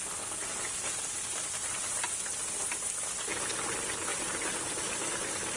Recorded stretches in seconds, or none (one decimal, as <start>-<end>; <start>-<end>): 0.0-4.1